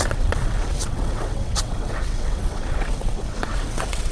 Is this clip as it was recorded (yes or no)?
no